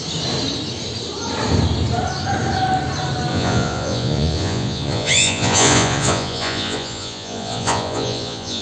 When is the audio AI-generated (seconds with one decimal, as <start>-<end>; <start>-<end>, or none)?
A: 3.3-8.6

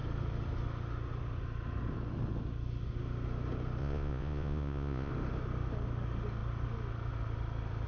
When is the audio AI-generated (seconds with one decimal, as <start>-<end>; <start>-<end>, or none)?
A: 3.8-5.1

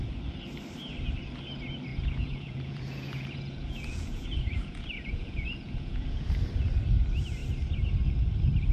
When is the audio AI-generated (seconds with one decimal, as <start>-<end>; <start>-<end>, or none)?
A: 1.9-6.3

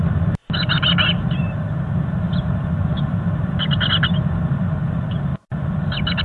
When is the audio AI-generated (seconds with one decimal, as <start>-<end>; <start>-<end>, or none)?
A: none

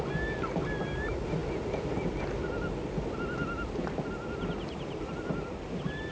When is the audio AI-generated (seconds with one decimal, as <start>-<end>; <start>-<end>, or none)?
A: none